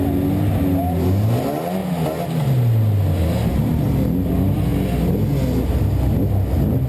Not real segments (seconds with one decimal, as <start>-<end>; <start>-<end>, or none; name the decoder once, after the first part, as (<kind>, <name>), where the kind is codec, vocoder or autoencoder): none